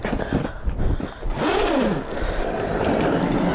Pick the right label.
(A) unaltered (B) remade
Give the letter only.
A